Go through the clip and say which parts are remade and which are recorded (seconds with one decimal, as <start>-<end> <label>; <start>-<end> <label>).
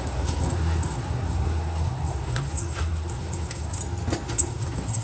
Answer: 0.0-3.8 remade; 3.8-4.3 recorded; 4.3-5.0 remade